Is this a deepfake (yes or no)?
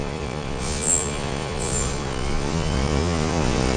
yes